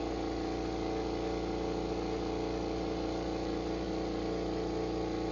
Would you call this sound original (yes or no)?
yes